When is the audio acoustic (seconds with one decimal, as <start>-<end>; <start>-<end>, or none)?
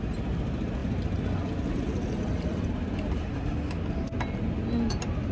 0.0-5.3